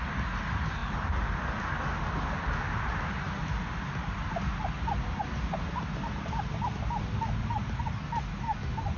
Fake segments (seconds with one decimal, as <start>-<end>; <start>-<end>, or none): none